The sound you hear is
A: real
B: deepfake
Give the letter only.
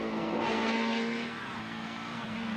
B